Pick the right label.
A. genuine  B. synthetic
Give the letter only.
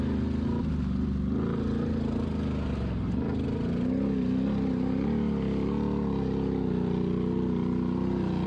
A